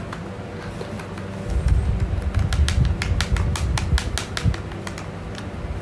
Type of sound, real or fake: real